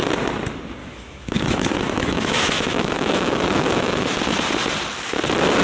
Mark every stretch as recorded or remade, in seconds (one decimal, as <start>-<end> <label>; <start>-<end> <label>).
0.0-0.8 recorded; 0.8-4.2 remade; 4.2-5.6 recorded